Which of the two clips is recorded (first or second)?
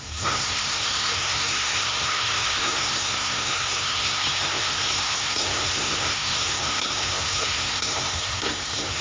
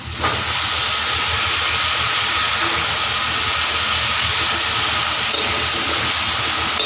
second